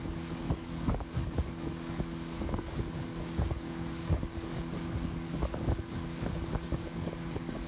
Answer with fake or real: fake